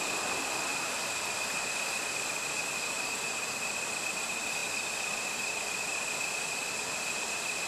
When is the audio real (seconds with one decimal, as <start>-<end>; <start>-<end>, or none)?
0.0-0.7; 1.7-7.7